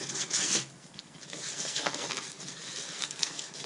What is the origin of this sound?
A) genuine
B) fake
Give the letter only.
B